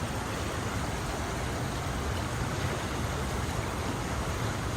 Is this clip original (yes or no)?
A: yes